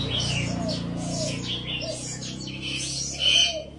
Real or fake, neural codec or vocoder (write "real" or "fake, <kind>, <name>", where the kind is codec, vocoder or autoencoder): real